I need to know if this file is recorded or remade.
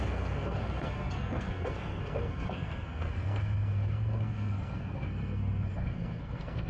remade